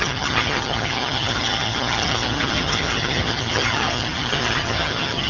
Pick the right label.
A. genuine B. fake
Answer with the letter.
B